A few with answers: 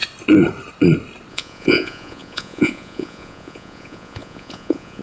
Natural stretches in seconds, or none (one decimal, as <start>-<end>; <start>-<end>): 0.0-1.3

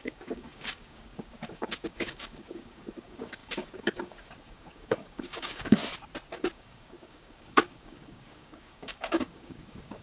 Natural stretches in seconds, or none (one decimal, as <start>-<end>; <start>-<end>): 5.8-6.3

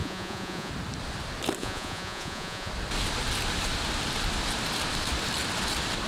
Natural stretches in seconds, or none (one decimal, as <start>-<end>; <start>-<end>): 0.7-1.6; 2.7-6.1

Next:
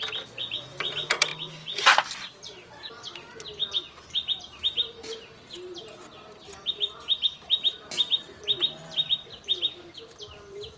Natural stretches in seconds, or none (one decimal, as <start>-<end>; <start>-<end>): 0.0-10.8

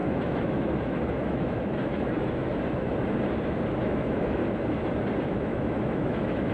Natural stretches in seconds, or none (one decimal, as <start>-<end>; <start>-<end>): 2.5-3.8; 4.4-5.2

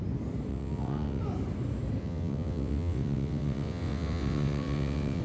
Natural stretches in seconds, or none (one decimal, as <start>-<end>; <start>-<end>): 0.0-0.5; 1.2-2.0

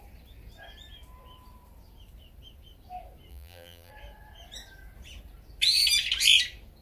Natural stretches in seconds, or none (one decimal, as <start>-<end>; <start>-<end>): 0.0-3.3; 3.9-6.8